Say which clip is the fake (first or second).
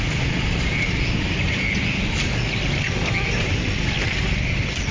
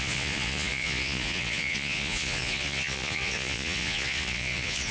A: second